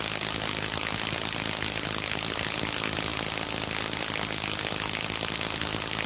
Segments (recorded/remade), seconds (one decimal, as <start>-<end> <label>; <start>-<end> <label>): 0.0-6.1 recorded